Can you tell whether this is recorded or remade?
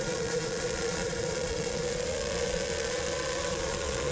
remade